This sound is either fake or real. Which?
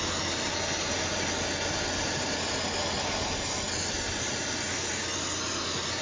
real